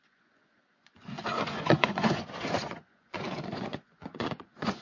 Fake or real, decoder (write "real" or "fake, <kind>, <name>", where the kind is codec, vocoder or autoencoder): fake, vocoder, Vocos